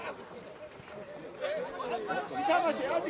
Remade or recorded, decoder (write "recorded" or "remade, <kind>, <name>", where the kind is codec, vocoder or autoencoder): recorded